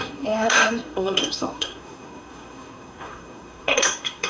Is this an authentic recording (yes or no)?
no